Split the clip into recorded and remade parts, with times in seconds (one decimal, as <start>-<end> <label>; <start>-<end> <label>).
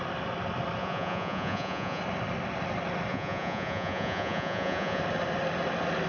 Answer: 0.0-0.8 recorded; 0.8-2.0 remade; 2.0-3.1 recorded; 3.1-5.0 remade; 5.0-6.1 recorded